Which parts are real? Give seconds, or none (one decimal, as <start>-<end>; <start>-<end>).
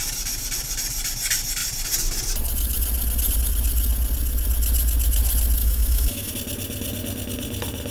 0.0-5.6; 6.3-7.9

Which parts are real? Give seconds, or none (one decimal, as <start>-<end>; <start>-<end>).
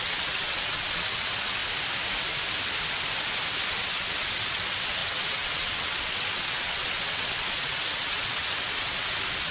1.6-3.6